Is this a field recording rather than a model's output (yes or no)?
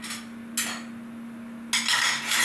yes